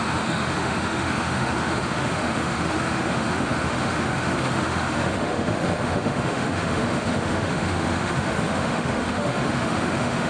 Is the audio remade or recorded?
remade